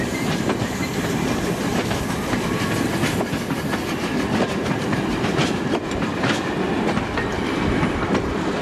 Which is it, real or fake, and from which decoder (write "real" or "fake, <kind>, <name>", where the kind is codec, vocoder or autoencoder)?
fake, vocoder, BigVGAN v2